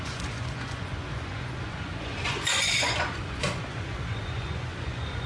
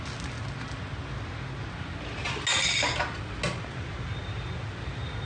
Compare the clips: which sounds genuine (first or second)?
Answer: second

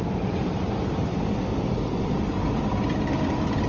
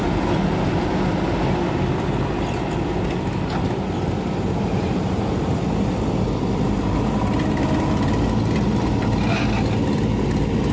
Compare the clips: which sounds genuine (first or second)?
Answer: second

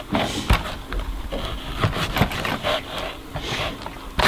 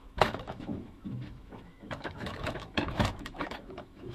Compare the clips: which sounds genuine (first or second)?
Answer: first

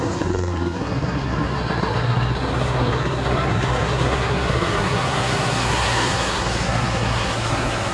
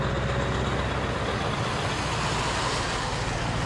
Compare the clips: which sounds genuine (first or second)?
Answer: second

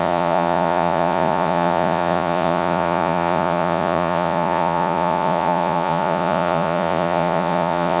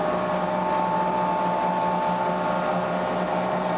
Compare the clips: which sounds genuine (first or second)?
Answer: second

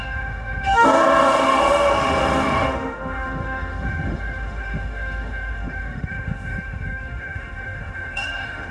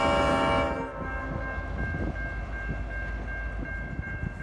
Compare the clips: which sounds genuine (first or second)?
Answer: second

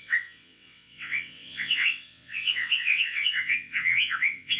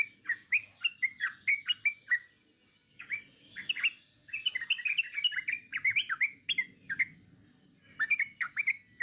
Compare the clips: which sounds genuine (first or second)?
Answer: second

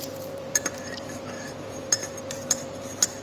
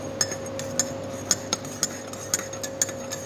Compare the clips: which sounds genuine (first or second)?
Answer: second